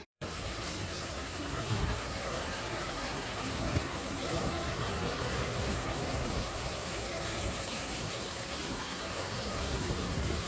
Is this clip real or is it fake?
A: fake